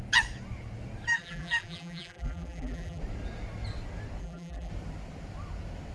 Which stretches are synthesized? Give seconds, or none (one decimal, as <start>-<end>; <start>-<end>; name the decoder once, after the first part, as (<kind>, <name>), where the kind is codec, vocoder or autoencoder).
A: 1.1-3.0 (vocoder, BigVGAN v2); 4.2-4.7